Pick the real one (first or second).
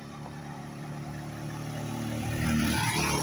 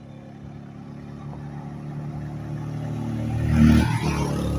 second